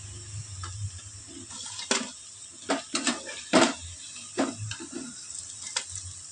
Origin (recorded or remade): recorded